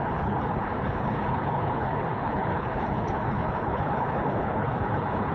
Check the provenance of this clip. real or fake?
fake